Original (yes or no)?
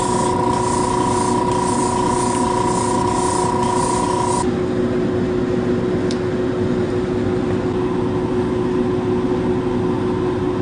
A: yes